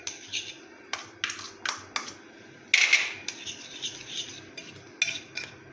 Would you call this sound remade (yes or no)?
no